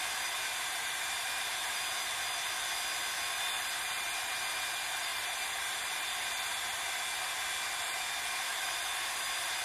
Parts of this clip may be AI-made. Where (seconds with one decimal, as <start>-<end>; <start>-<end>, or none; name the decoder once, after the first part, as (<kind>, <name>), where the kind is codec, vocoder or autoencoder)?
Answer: 0.5-1.8 (vocoder, BigVGAN v2); 5.1-7.0; 8.5-9.6